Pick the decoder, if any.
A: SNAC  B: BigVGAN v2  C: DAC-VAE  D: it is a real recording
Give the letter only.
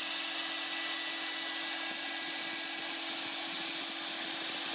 D